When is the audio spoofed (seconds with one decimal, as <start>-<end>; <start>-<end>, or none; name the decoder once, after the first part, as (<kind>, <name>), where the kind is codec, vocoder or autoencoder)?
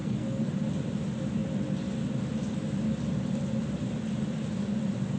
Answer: 0.0-0.5 (codec, SNAC)